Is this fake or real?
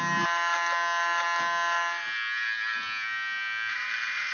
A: real